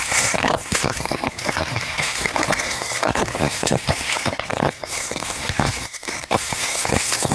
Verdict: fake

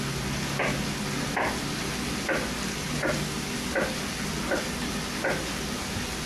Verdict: real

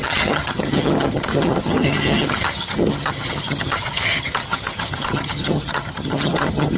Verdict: fake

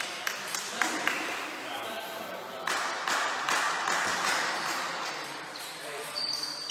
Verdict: fake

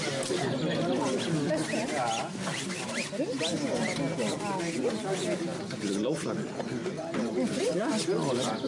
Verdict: real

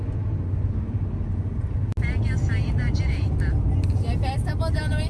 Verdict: real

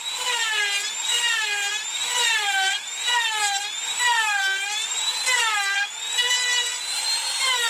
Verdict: real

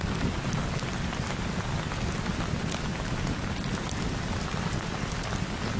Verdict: real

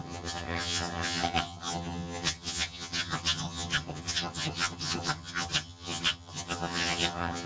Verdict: fake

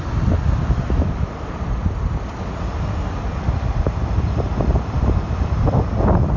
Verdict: real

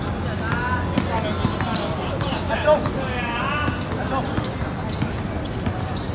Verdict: real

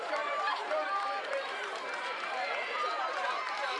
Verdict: fake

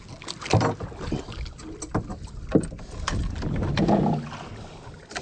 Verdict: real